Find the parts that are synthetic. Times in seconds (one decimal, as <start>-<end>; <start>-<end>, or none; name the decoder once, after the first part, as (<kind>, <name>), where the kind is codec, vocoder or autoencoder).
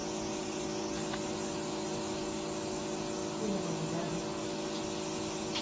none